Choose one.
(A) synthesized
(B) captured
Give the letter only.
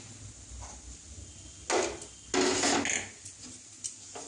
B